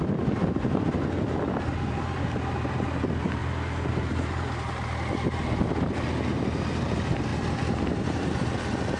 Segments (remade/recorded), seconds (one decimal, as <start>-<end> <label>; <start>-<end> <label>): 0.0-9.0 recorded

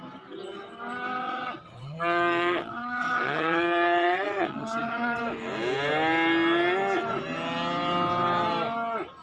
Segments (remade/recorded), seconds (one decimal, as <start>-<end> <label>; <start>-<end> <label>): 0.0-1.2 recorded; 1.2-5.2 remade; 5.2-9.2 recorded

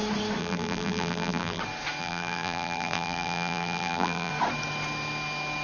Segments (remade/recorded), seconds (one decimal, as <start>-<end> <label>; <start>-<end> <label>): 0.0-0.4 recorded; 0.4-1.6 remade; 1.6-2.0 recorded; 2.0-4.3 remade; 4.3-5.6 recorded

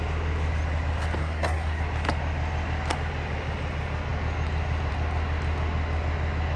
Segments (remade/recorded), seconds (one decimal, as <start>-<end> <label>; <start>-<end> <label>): 0.0-1.2 recorded; 1.2-1.8 remade; 1.8-6.6 recorded

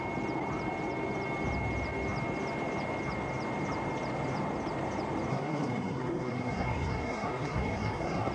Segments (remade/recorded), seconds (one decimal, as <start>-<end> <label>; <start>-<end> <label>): 0.0-5.3 recorded; 5.3-8.3 remade